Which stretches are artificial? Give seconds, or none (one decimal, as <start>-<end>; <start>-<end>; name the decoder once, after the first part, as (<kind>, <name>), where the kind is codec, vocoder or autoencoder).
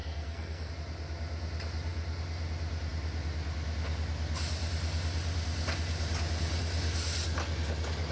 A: 0.0-0.7 (codec, SNAC)